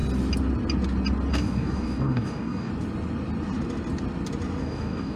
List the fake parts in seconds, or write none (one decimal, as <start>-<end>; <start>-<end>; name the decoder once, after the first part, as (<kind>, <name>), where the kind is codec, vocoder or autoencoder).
1.3-2.7 (codec, DAC); 4.6-5.2